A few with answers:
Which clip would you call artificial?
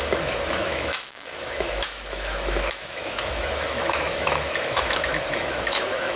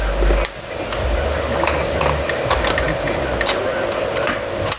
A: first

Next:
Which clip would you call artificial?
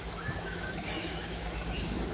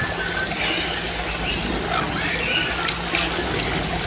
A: first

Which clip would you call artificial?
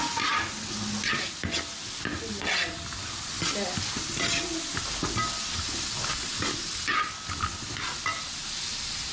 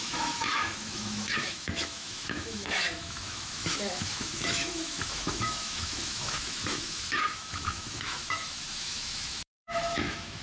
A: second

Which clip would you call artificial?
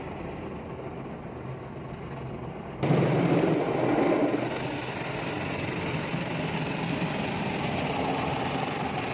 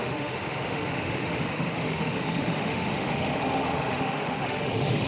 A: second